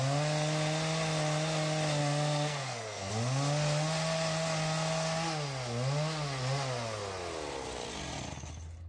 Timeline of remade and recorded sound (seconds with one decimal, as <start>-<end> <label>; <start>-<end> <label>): 0.0-2.0 recorded; 2.0-3.1 remade; 3.1-8.9 recorded